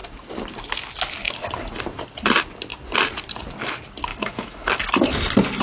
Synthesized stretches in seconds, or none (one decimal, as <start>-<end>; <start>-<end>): 4.1-4.8